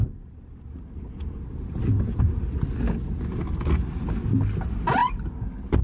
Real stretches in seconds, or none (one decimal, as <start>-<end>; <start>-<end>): 0.0-5.8

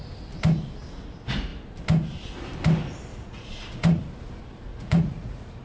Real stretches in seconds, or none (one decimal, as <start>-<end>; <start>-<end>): 0.0-3.1; 4.0-4.7

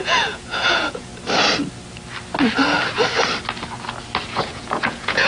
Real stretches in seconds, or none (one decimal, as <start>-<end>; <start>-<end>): 1.1-4.3